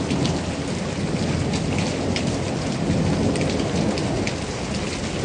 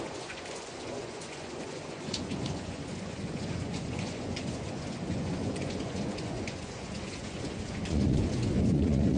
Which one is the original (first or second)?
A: first